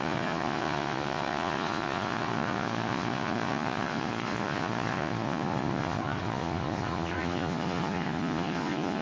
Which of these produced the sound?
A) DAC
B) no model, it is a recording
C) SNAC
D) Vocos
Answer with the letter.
D